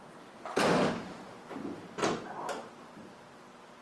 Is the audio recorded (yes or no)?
yes